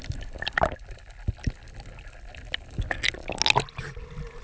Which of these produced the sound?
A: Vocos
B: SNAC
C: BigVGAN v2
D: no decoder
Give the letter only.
D